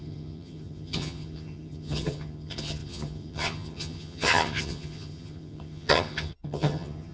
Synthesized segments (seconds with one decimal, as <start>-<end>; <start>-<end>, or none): 0.0-7.1